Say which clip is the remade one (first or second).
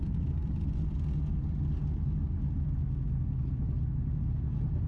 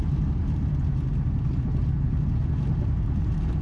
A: second